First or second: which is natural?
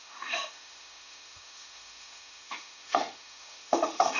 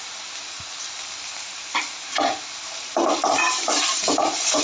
second